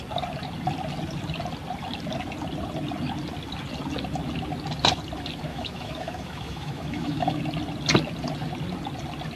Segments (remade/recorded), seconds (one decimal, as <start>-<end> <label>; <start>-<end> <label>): 0.0-5.5 recorded; 5.5-7.4 remade; 7.4-9.4 recorded

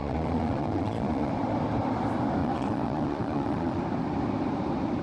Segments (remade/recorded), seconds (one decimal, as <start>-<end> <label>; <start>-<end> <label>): 0.0-1.3 remade; 1.3-2.4 recorded; 2.4-3.8 remade; 3.8-5.0 recorded

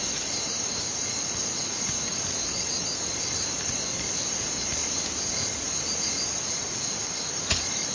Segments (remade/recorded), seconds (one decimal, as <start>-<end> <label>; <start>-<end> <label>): 0.0-7.9 recorded

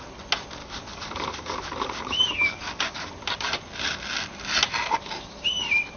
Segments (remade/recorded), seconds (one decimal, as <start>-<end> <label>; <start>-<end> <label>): 0.0-0.6 recorded; 0.6-3.1 remade; 3.1-6.0 recorded